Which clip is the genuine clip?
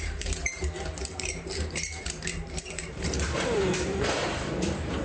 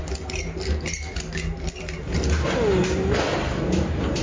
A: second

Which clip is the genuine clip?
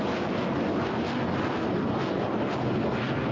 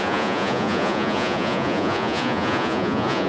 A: first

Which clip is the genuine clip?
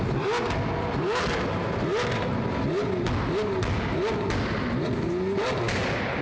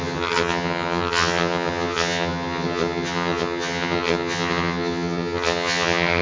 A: first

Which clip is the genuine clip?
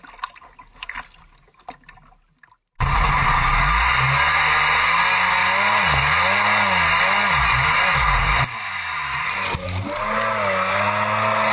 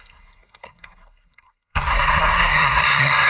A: first